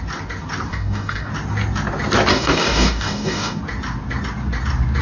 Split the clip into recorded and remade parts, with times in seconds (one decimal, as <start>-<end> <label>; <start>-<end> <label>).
0.0-0.7 recorded; 0.7-1.3 remade; 1.3-2.3 recorded; 2.3-3.6 remade; 3.6-5.0 recorded